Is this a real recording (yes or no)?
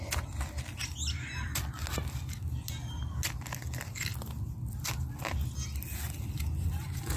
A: yes